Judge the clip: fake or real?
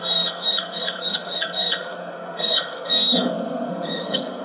fake